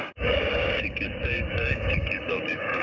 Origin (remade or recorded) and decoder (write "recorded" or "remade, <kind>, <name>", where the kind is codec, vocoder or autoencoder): remade, codec, DAC